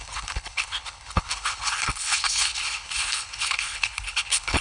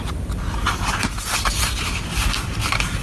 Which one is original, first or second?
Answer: second